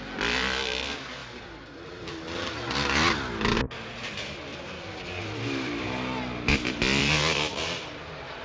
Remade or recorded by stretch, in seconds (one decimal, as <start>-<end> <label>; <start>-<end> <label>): 0.0-8.4 recorded